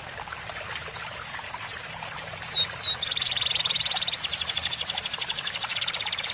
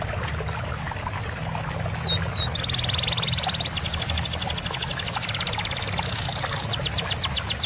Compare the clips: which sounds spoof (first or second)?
first